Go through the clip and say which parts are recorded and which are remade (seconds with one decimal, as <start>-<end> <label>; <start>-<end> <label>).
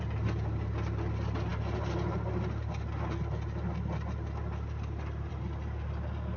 0.0-6.4 recorded